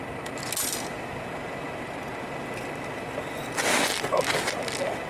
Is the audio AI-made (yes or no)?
no